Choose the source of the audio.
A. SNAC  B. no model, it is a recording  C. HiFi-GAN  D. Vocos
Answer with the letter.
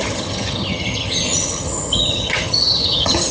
C